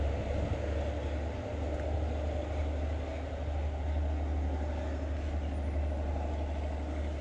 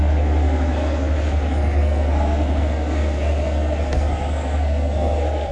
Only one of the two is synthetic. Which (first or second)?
second